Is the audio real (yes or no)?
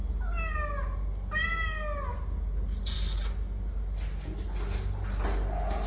yes